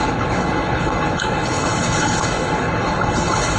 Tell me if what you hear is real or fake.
fake